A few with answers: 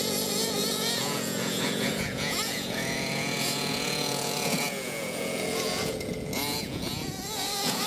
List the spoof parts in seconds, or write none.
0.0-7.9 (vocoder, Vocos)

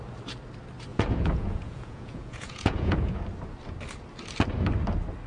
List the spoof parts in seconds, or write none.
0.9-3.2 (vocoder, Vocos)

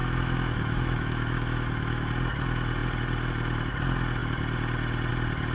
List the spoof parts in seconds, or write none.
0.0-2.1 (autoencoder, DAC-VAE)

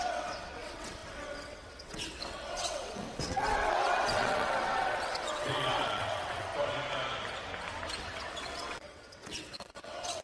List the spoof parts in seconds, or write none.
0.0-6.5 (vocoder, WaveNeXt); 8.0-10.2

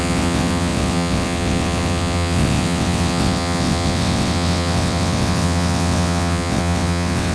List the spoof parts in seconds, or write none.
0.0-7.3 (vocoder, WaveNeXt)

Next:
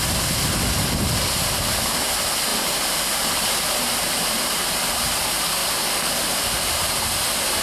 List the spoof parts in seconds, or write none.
2.5-4.8 (vocoder, BigVGAN v2)

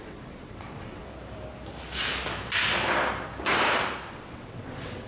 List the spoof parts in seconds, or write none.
0.0-1.0 (vocoder, WaveNeXt); 4.1-5.1